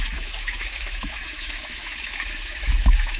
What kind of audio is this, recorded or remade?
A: remade